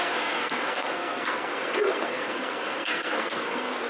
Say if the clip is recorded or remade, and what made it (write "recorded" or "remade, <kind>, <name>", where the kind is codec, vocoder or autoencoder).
remade, codec, SNAC